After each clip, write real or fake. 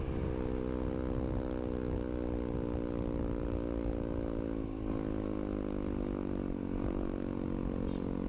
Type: real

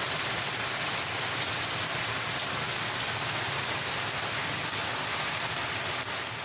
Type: real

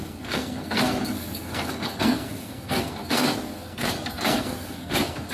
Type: fake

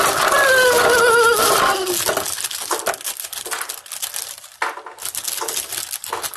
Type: real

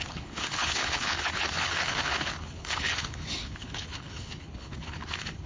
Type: fake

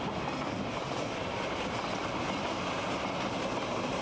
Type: real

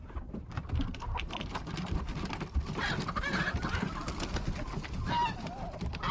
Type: real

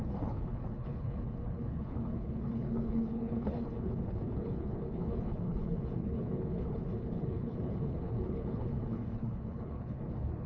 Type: fake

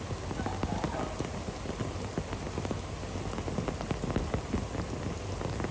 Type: real